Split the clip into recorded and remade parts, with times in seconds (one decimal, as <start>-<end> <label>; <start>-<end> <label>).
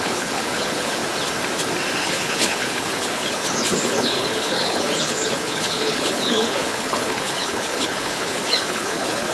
0.0-1.0 remade; 1.0-2.0 recorded; 2.0-9.3 remade